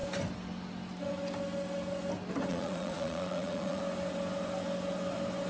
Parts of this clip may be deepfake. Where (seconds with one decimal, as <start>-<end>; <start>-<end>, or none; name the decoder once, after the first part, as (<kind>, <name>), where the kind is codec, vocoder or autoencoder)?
2.5-3.8 (vocoder, Vocos)